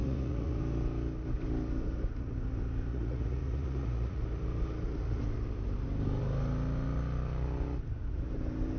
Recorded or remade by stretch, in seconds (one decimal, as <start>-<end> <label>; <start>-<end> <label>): 0.0-0.6 remade; 0.6-2.9 recorded; 2.9-4.2 remade; 4.2-8.8 recorded